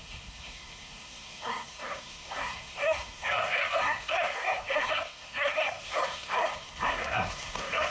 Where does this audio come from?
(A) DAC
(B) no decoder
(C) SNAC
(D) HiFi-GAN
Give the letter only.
C